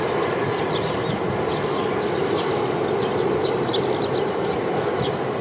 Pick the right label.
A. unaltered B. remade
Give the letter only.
A